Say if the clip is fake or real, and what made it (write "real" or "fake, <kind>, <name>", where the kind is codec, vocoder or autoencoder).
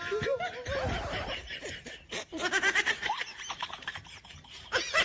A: fake, vocoder, BigVGAN v2